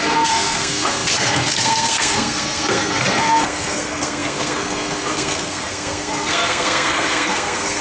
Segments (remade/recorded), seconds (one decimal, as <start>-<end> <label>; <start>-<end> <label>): 0.0-7.8 remade